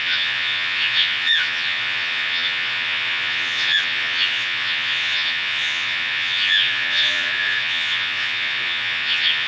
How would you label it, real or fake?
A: fake